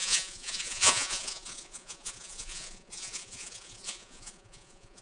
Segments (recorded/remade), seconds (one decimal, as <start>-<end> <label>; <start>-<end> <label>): 0.0-5.0 remade